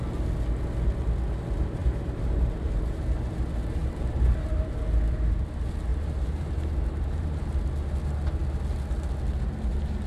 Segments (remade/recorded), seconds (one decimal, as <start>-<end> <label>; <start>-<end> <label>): 0.0-1.8 recorded; 1.8-3.3 remade; 3.3-3.8 recorded; 3.8-4.7 remade; 4.7-5.9 recorded; 5.9-7.4 remade; 7.4-10.1 recorded